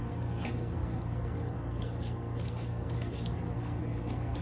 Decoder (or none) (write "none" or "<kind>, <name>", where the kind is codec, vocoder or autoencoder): codec, SNAC